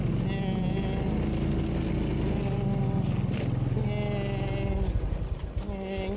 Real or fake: real